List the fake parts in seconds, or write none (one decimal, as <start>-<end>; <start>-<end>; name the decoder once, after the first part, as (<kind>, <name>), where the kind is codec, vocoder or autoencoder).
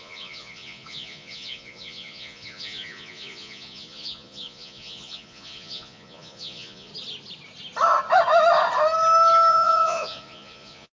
0.0-6.9 (vocoder, Vocos); 9.5-11.0